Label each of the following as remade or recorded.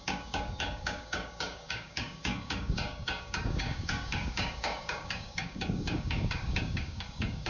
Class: remade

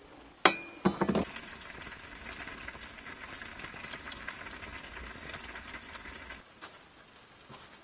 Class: recorded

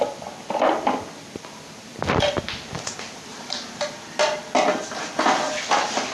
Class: recorded